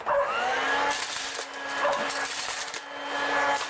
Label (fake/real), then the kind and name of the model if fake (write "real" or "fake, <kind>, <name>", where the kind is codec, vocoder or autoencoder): real